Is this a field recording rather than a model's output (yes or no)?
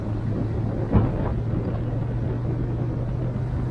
yes